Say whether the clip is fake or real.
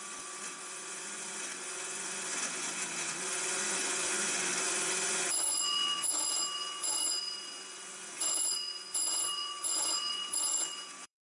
fake